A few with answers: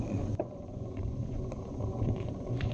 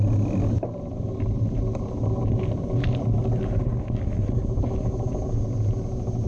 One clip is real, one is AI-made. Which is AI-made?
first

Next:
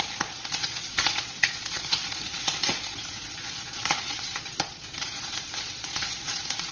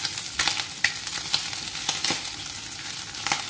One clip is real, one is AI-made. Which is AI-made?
first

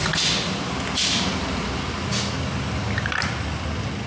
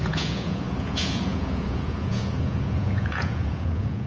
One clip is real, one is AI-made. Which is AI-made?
second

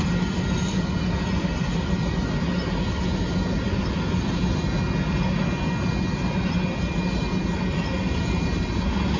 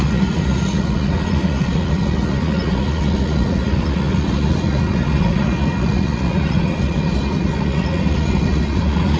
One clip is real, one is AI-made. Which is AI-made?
second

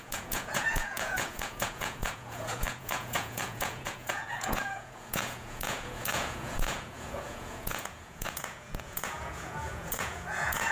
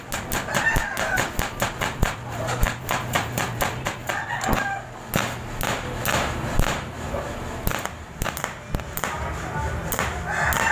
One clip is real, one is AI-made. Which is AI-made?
first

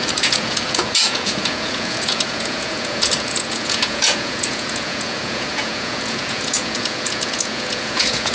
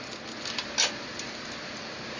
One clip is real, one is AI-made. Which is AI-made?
first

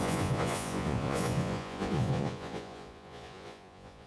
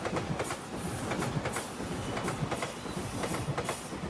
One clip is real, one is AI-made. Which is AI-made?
first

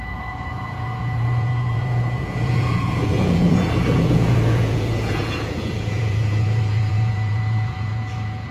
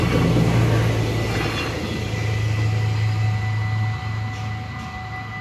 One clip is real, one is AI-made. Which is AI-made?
first